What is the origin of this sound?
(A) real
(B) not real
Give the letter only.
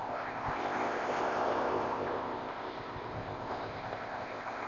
B